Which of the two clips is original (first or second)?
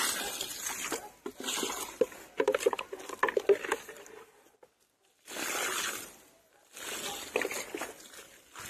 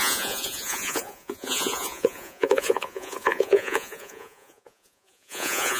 first